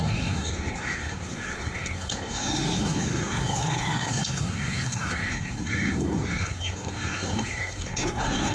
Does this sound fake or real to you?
fake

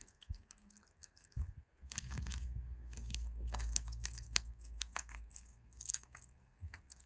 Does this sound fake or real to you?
fake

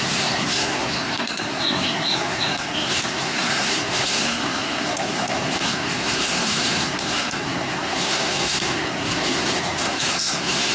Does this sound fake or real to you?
fake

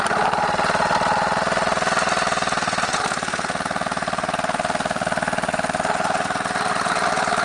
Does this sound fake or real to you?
real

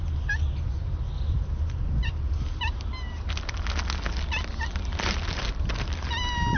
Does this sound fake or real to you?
real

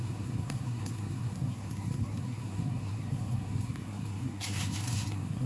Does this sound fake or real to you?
fake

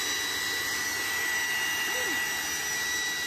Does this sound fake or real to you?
real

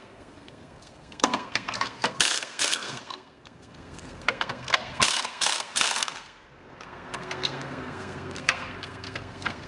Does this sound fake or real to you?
fake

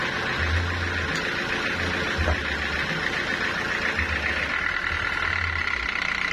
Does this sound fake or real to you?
real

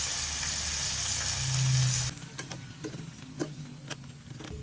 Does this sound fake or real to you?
real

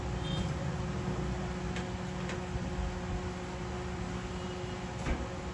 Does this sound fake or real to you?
real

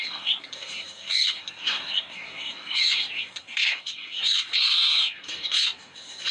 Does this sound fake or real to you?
fake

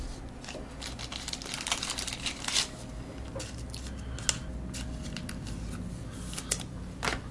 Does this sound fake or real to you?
real